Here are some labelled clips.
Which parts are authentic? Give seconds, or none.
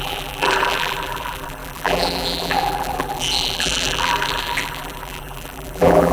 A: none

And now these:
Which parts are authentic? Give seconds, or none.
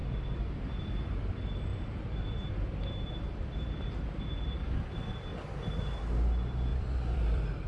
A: 0.8-5.3; 6.0-6.7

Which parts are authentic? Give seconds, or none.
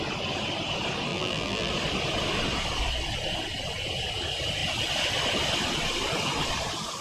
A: 0.0-1.1; 1.7-7.0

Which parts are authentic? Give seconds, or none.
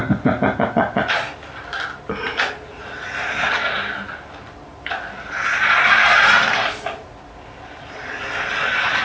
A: 1.0-9.0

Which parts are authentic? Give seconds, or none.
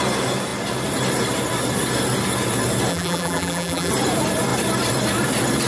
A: 0.0-2.9; 3.9-5.7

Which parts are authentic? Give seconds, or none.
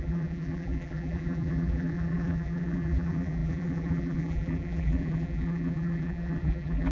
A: none